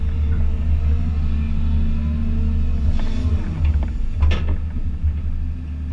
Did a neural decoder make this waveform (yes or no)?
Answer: no